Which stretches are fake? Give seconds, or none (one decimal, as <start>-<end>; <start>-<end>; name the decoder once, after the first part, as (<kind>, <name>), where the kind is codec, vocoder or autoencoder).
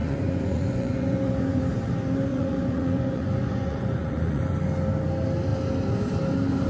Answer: 0.0-1.6 (vocoder, Vocos); 2.3-4.4